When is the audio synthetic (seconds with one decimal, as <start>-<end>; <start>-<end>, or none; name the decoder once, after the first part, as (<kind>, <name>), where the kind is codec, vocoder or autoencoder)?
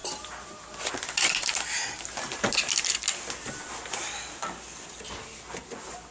none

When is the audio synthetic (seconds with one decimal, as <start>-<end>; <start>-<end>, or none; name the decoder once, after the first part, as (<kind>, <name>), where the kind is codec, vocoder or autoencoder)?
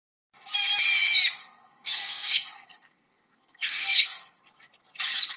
1.4-4.4 (codec, SNAC)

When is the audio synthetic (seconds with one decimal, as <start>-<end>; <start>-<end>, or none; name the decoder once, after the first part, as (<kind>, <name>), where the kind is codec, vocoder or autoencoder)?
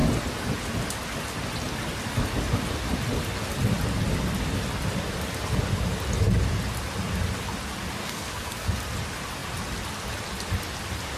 8.0-8.7 (codec, SNAC)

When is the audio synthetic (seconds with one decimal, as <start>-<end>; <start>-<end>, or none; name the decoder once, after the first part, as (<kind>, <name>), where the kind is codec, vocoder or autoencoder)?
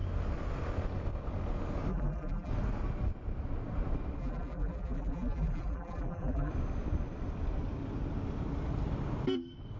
1.9-2.5 (vocoder, BigVGAN v2); 4.2-6.5